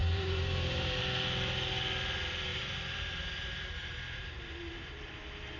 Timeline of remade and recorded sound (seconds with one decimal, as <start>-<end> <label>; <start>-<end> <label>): 0.0-1.0 remade; 1.0-2.5 recorded; 2.5-5.0 remade; 5.0-5.6 recorded